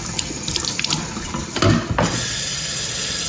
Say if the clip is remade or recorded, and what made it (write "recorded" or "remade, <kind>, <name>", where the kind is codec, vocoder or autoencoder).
recorded